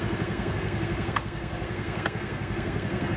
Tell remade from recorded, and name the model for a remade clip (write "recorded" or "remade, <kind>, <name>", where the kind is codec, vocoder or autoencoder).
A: remade, codec, SNAC